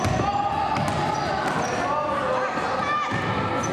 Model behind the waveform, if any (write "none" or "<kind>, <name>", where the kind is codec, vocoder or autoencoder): none